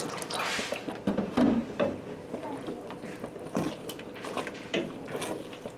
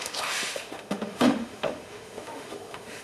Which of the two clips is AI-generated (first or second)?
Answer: second